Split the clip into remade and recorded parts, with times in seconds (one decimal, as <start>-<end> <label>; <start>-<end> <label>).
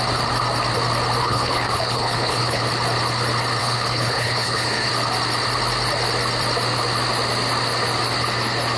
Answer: 0.0-1.2 recorded; 1.2-2.6 remade; 2.6-3.6 recorded; 3.6-4.9 remade; 4.9-8.8 recorded